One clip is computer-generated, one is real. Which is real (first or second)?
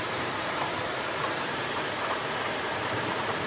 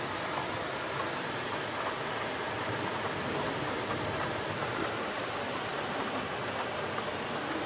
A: second